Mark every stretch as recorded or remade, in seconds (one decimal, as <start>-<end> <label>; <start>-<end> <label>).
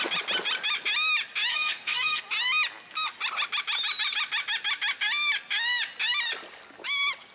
0.0-1.5 recorded; 1.5-2.2 remade; 2.2-7.3 recorded